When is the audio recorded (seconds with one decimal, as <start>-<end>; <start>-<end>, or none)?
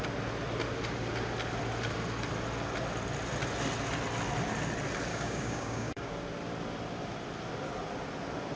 0.0-5.1; 6.1-8.6